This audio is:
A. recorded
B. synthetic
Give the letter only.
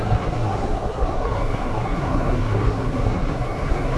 B